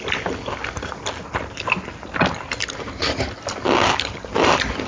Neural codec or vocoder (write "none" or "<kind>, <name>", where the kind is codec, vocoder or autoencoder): none